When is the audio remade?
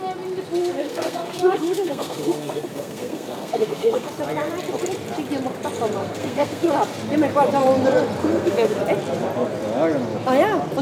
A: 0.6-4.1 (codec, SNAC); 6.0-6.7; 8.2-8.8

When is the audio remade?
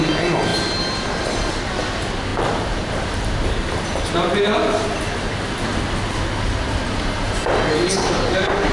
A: 2.3-5.6 (vocoder, BigVGAN v2)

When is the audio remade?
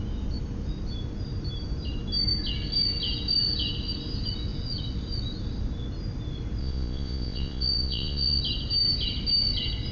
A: 6.6-8.4 (vocoder, Vocos)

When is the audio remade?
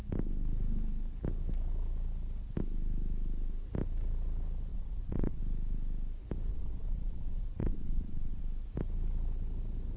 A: 4.7-5.4 (vocoder, WaveNeXt); 6.5-8.4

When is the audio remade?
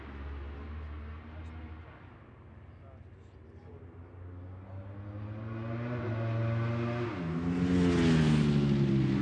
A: none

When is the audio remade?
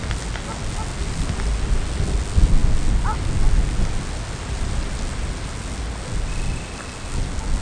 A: none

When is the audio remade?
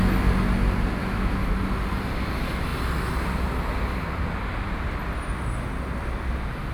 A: 1.0-1.5 (autoencoder, DAC-VAE)